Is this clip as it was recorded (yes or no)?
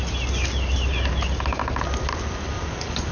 yes